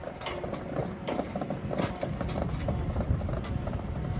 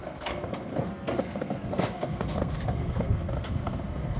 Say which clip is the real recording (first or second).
first